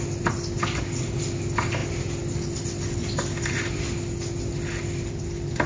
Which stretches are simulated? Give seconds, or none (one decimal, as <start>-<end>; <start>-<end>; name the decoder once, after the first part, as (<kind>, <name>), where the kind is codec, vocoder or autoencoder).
none